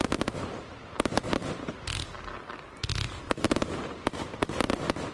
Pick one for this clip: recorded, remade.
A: recorded